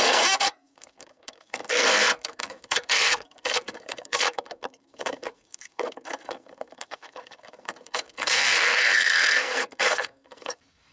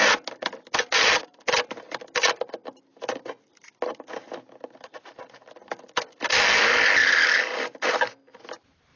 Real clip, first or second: second